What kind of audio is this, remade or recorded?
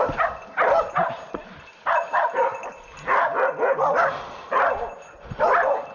recorded